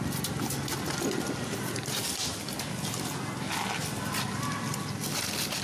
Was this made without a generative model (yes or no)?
yes